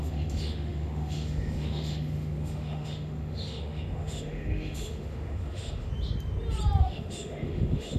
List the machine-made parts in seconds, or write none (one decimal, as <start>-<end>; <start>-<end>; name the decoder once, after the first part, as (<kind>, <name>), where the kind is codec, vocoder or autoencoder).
0.0-5.9 (autoencoder, DAC-VAE); 6.8-8.0